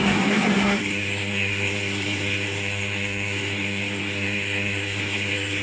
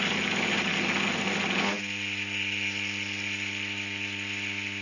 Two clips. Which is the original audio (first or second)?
second